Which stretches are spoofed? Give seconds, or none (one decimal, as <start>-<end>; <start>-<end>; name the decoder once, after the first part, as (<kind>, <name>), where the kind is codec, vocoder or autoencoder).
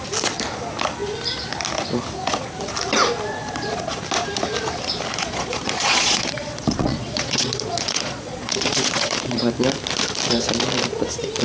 3.4-4.0 (vocoder, Vocos); 5.1-9.4